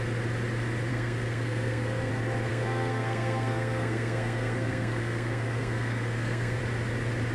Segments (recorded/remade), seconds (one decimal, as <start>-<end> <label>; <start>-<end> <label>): 0.0-0.9 recorded; 0.9-2.1 remade; 2.1-2.5 recorded; 2.5-6.6 remade; 6.6-7.3 recorded